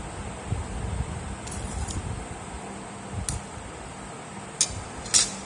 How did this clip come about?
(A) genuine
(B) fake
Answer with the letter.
A